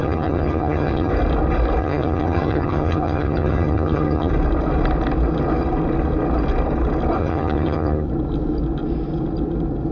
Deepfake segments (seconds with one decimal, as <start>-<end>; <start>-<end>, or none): 0.0-1.1; 1.8-4.3; 7.2-8.1